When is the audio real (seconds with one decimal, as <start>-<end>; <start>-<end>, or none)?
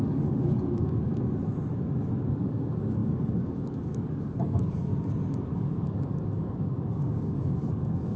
1.1-2.3; 4.9-5.4